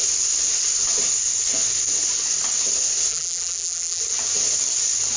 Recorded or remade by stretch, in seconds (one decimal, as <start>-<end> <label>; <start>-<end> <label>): 0.0-3.1 recorded; 3.1-4.0 remade; 4.0-5.2 recorded